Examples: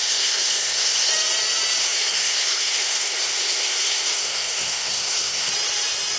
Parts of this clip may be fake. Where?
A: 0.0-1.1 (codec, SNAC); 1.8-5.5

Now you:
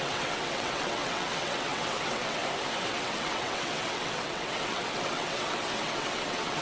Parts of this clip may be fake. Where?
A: 0.0-2.4 (vocoder, WaveNeXt); 2.9-6.6

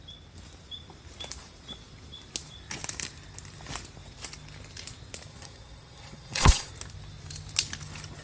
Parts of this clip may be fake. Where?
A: 5.3-6.7 (vocoder, Vocos)

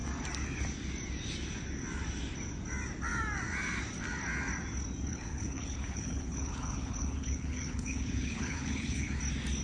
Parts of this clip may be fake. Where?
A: 5.1-9.2 (codec, HILCodec)

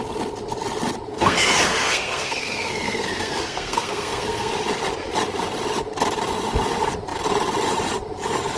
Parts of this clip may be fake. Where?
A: 1.1-4.5 (codec, SNAC)

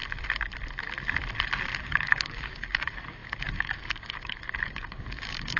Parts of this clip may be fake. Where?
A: 1.8-5.6 (codec, DAC)

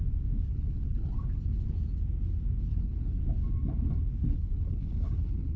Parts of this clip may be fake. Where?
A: 0.5-1.1 (codec, HILCodec); 2.7-3.2; 4.2-5.6

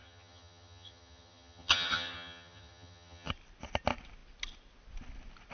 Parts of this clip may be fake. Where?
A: 0.0-3.3 (vocoder, HiFi-GAN)